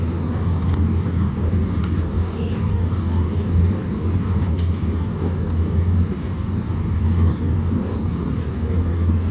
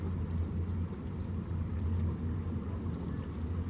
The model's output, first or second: first